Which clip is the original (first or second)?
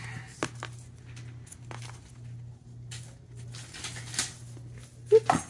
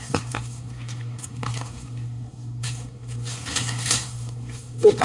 first